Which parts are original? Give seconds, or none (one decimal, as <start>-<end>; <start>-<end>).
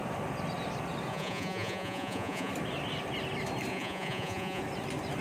0.0-1.1; 2.5-3.7; 4.6-5.2